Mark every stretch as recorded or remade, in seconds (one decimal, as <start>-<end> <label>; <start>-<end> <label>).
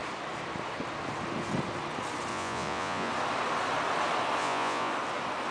0.0-2.3 recorded; 2.3-3.1 remade; 3.1-4.4 recorded; 4.4-4.9 remade; 4.9-5.5 recorded